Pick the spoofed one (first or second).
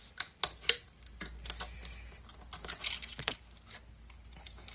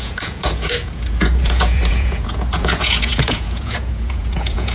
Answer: second